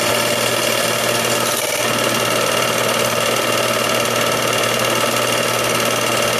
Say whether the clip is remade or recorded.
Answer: recorded